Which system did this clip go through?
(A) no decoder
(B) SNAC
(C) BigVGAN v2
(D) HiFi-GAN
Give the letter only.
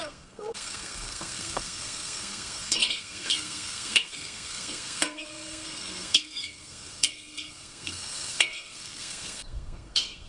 B